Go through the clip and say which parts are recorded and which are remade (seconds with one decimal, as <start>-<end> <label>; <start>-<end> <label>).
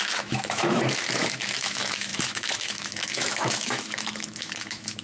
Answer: 0.0-5.0 remade